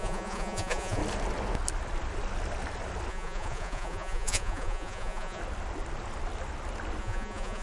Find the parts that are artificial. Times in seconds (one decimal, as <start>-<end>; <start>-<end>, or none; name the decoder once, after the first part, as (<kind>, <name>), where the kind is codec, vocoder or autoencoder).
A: 0.0-1.0 (vocoder, Vocos); 3.1-5.4; 7.0-7.6